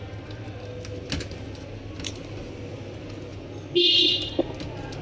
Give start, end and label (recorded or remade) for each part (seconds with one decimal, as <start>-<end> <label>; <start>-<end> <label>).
0.0-5.0 recorded